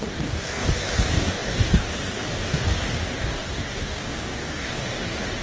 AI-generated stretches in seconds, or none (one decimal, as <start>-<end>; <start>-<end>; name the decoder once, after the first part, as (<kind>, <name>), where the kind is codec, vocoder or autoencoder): 0.0-5.4 (codec, DAC)